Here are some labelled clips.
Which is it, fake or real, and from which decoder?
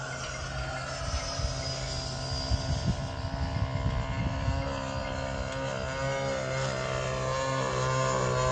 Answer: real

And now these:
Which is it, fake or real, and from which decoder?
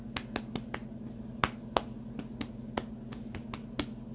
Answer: real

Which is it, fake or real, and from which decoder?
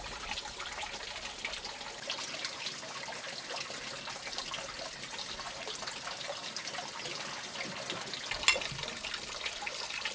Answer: real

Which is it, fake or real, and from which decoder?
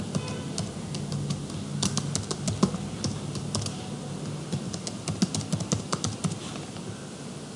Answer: real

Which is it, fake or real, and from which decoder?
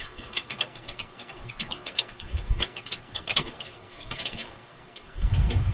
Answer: fake, codec, SNAC